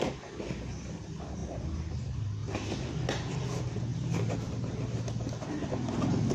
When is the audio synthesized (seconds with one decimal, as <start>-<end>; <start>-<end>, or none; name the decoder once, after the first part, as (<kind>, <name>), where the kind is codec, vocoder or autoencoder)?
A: none